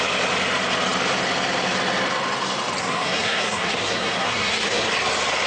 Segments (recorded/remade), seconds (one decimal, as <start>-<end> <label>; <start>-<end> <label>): 0.0-2.8 recorded; 2.8-4.9 remade; 4.9-5.5 recorded